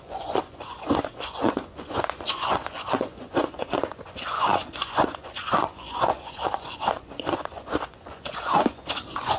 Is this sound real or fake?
fake